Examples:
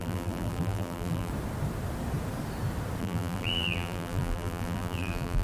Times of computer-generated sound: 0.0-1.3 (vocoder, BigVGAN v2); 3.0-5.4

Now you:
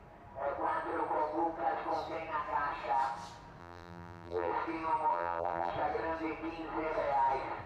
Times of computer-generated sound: 3.6-4.5 (vocoder, BigVGAN v2); 5.1-5.7

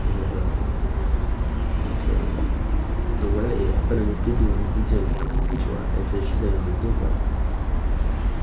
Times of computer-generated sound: 5.1-5.6 (vocoder, BigVGAN v2)

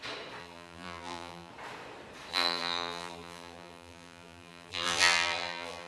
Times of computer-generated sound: 0.4-1.5 (vocoder, BigVGAN v2); 2.3-5.9

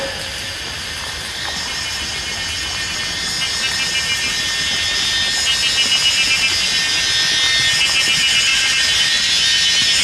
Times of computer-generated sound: 8.5-9.3 (vocoder, BigVGAN v2)

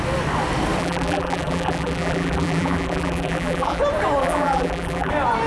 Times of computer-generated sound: 0.8-3.8 (vocoder, BigVGAN v2); 4.2-5.1